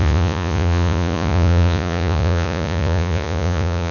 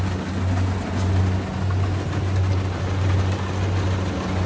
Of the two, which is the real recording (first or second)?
second